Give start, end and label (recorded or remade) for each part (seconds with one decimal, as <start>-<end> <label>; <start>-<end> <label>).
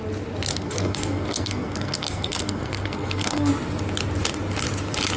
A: 0.0-0.5 recorded; 0.5-3.5 remade; 3.5-5.2 recorded